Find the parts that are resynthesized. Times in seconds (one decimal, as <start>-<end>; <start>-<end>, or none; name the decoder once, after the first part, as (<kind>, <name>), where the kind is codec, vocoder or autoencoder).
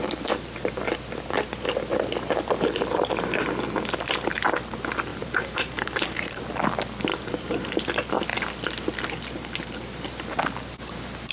5.1-6.4 (vocoder, BigVGAN v2); 7.1-7.8